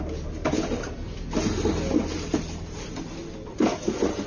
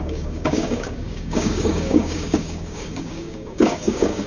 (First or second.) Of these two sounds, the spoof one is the second